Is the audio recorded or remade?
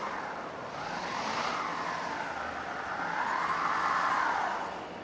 recorded